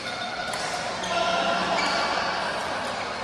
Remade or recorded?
recorded